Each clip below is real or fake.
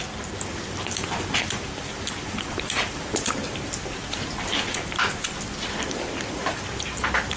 real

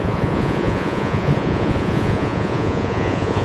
fake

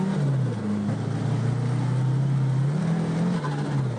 real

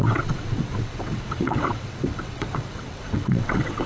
fake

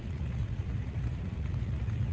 fake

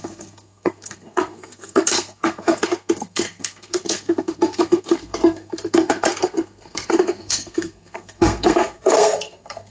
fake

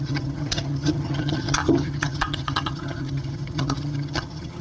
fake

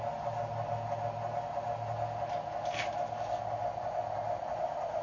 real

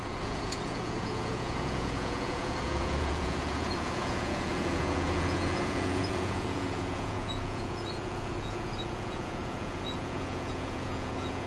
fake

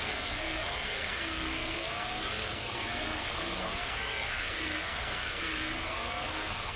fake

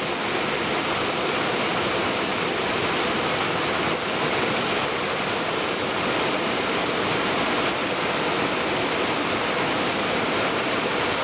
real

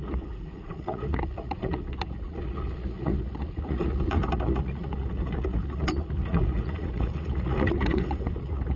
fake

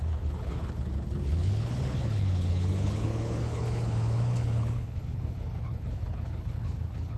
fake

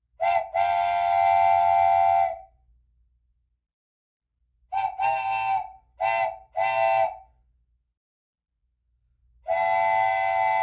real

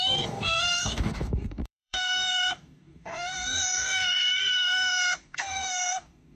fake